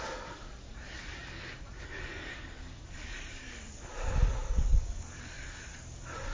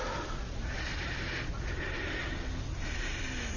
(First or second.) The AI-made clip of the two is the first